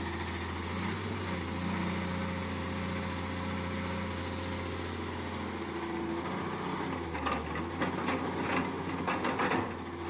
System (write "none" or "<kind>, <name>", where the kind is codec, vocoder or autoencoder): none